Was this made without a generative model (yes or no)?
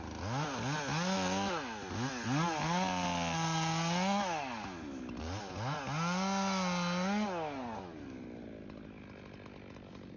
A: yes